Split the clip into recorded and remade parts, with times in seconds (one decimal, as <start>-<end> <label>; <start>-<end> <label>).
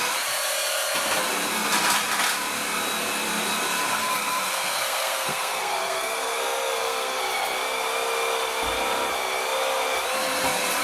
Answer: 0.0-3.9 recorded; 3.9-7.2 remade; 7.2-10.8 recorded